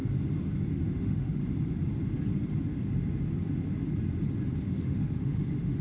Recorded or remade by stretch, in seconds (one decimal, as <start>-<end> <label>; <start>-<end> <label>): 0.0-0.7 recorded; 0.7-1.4 remade; 1.4-4.6 recorded; 4.6-5.8 remade